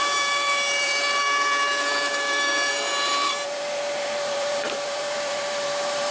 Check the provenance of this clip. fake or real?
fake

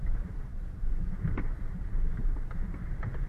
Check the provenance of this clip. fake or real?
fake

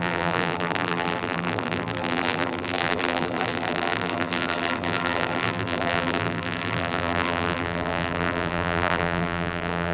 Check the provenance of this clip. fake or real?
fake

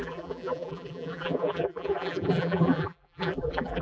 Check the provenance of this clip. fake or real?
fake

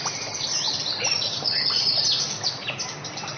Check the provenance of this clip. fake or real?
fake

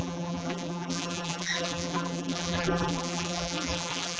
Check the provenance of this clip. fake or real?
fake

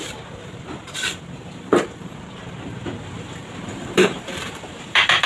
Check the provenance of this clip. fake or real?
fake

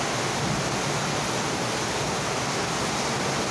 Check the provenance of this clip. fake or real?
real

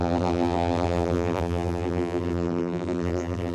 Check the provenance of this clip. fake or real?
fake